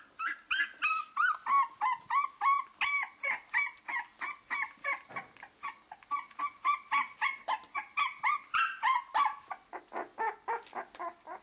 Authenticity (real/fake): real